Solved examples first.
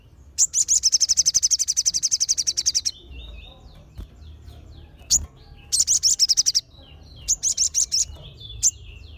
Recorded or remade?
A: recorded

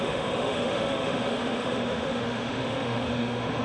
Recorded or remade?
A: remade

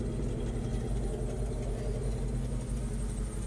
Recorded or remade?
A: recorded